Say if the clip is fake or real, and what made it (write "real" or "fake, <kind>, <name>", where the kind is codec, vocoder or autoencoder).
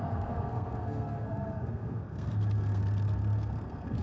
fake, codec, SNAC